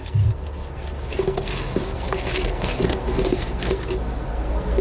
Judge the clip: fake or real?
fake